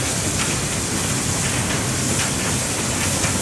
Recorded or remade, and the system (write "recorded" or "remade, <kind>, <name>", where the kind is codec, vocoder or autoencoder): recorded